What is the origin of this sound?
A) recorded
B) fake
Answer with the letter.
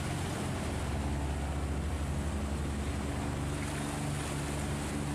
A